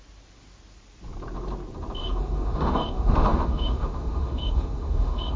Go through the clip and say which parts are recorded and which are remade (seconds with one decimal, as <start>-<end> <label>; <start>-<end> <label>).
0.0-2.0 recorded; 2.0-5.4 remade